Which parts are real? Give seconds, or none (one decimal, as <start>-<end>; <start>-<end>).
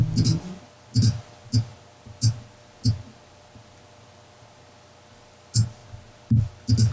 0.0-6.9